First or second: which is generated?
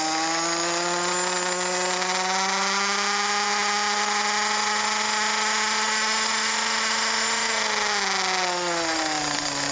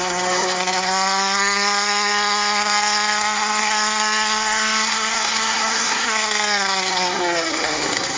second